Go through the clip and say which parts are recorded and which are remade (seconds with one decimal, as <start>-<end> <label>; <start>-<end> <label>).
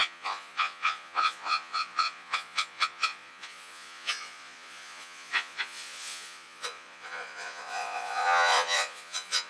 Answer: 0.0-9.5 remade